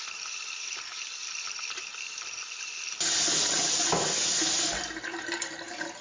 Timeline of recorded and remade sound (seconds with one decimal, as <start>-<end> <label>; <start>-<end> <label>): 0.0-6.0 recorded

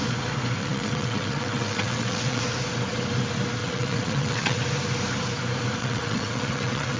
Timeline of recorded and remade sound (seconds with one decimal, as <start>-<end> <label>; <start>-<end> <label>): 0.0-0.6 recorded; 0.6-2.4 remade; 2.4-3.6 recorded; 3.6-4.6 remade; 4.6-5.8 recorded; 5.8-7.0 remade

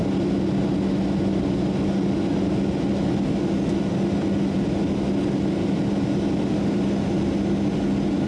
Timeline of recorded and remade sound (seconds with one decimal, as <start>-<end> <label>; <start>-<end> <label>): 0.0-8.3 recorded